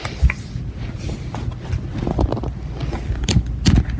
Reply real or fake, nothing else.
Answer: real